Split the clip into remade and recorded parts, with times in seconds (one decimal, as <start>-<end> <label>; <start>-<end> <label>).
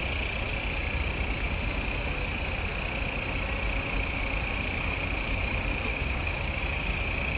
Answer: 0.0-5.9 recorded; 5.9-6.6 remade; 6.6-7.4 recorded